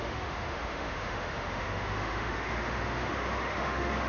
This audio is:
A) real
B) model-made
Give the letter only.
B